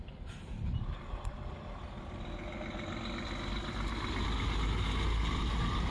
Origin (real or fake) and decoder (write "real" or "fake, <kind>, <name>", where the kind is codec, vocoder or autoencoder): real